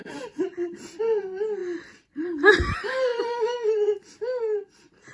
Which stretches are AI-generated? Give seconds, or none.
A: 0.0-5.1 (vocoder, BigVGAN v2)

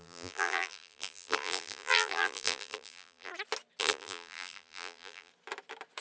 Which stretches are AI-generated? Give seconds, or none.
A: 0.0-3.3 (vocoder, BigVGAN v2); 3.8-5.3

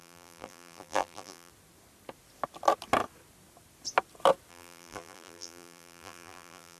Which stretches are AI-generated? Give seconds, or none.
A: 0.0-1.5 (vocoder, BigVGAN v2); 4.5-6.8

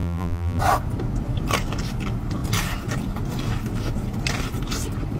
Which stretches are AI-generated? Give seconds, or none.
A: 0.0-0.6 (vocoder, BigVGAN v2)